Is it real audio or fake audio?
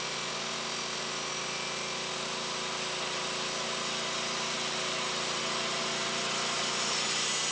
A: real